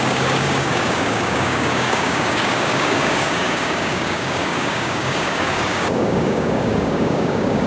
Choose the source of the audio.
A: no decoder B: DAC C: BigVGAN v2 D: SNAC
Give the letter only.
B